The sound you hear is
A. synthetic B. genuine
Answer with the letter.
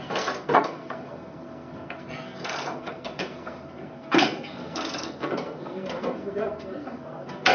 A